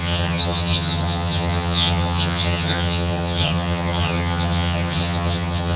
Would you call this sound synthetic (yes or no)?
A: yes